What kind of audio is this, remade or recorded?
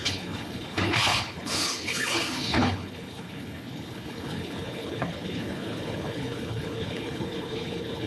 remade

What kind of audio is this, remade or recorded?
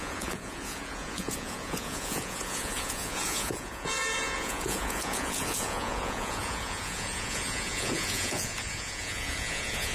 remade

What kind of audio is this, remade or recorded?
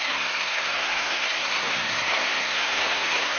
remade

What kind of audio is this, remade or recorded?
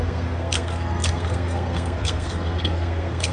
remade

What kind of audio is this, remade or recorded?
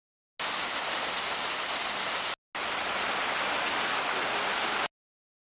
recorded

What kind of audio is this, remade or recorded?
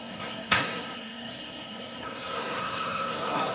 remade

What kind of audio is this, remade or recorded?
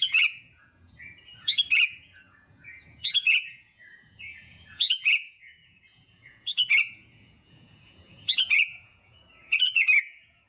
remade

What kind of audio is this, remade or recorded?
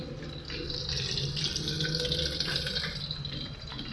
recorded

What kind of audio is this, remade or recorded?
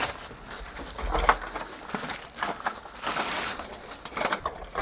recorded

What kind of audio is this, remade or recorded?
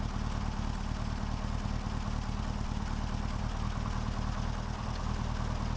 recorded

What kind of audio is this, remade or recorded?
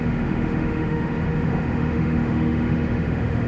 remade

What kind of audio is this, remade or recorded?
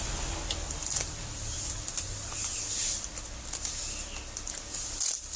recorded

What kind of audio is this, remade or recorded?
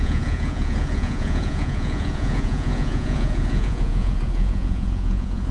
remade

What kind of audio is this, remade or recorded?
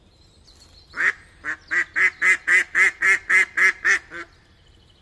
recorded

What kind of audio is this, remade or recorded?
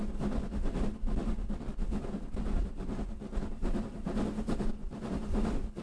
recorded